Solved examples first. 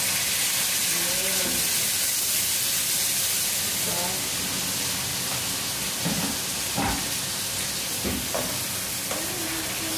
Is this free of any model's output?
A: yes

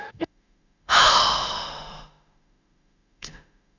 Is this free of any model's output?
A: no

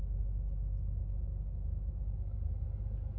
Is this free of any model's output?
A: yes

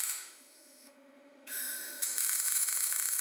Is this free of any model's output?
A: no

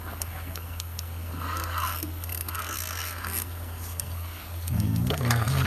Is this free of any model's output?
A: no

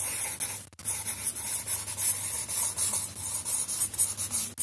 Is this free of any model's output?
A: yes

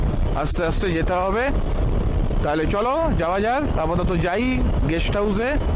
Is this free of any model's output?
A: yes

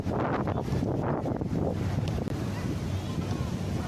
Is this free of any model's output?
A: yes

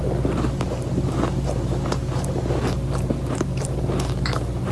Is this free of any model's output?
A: yes